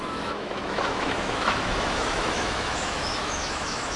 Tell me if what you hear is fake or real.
fake